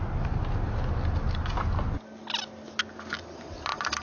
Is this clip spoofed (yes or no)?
no